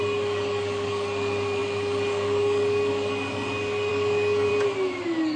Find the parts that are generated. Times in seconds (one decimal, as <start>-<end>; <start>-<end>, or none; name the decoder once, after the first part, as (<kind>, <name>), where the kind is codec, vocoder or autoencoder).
0.0-4.5 (codec, DAC); 5.0-5.4